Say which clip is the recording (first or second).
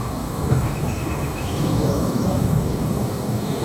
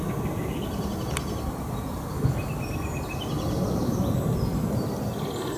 second